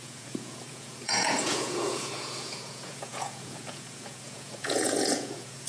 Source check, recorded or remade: remade